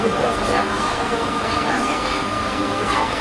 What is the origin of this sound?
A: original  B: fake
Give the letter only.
B